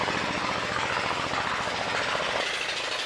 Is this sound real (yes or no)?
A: yes